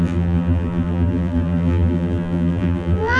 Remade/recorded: remade